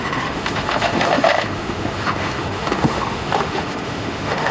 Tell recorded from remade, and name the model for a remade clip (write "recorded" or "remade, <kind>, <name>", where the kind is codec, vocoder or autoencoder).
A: remade, autoencoder, DAC-VAE